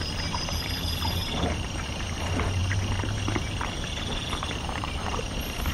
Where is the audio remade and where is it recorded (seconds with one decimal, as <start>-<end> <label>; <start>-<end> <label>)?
0.0-2.6 remade; 2.6-4.6 recorded; 4.6-5.7 remade